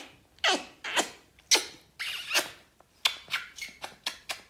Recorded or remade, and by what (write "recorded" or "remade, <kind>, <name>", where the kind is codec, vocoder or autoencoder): recorded